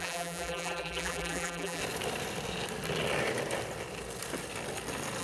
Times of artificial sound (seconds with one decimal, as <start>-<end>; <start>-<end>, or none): 0.0-1.8